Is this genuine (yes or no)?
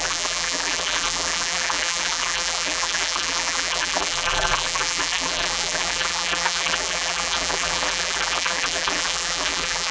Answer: no